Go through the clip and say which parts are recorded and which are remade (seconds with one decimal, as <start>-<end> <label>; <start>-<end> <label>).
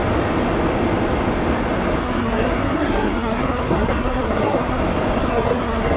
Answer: 0.0-2.0 recorded; 2.0-4.8 remade; 4.8-5.2 recorded; 5.2-6.0 remade